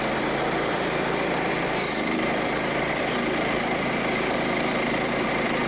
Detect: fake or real fake